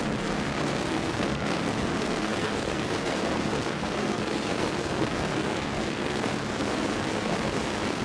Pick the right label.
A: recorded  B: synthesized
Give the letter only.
B